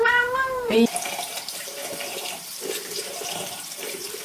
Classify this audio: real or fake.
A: fake